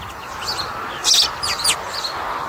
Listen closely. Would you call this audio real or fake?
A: real